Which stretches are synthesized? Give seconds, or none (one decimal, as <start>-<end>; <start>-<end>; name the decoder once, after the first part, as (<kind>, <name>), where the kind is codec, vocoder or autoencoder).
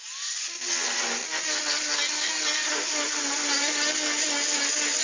none